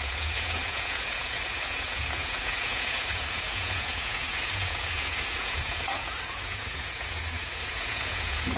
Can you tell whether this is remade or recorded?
remade